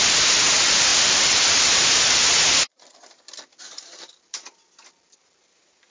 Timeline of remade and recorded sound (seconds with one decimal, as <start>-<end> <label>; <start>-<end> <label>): 0.0-5.9 recorded